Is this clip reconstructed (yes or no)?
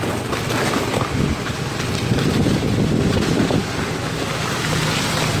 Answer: no